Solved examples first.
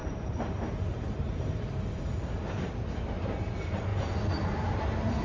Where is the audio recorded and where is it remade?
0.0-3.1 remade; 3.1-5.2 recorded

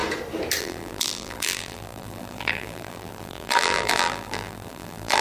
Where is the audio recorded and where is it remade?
0.0-0.6 recorded; 0.6-5.2 remade

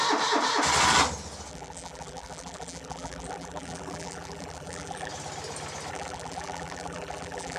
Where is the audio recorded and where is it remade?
0.0-1.5 recorded; 1.5-5.1 remade; 5.1-5.9 recorded; 5.9-7.6 remade

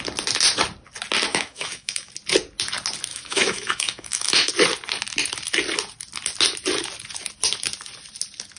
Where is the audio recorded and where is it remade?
0.0-1.3 recorded; 1.3-2.1 remade; 2.1-3.1 recorded; 3.1-4.5 remade; 4.5-8.6 recorded

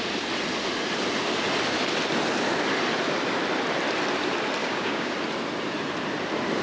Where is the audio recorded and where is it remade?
0.0-4.6 recorded; 4.6-5.1 remade; 5.1-6.6 recorded